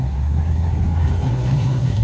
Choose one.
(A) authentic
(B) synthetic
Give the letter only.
B